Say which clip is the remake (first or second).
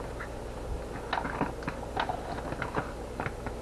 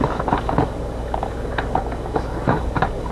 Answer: second